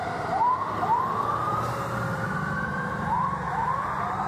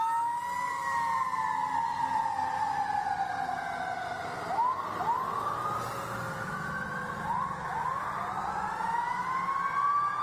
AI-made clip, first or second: first